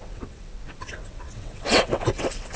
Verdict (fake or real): fake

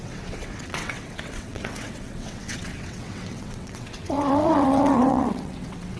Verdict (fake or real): fake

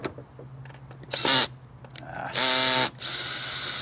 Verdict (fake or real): real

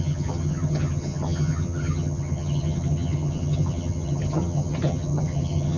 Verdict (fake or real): fake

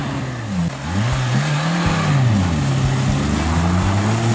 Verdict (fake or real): real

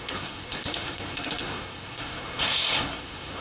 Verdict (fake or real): fake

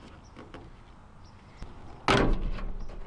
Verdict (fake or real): real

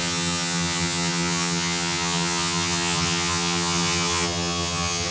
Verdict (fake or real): fake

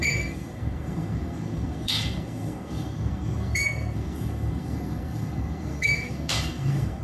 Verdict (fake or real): fake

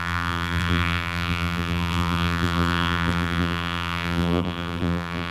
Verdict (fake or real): fake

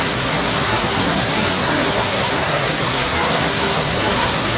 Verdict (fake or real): fake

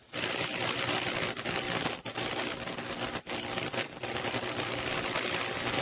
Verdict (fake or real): real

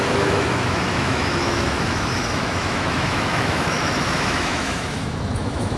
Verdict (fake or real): fake